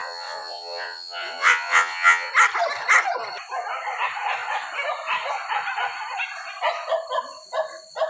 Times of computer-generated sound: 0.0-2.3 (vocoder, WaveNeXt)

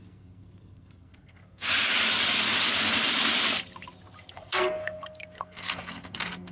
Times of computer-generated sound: 0.0-1.7 (codec, SNAC); 4.3-6.5